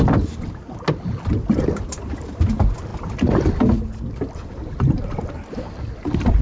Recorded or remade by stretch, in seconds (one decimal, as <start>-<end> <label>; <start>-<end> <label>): 0.0-6.4 recorded